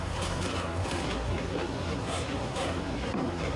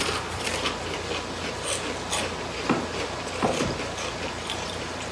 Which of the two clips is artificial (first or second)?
first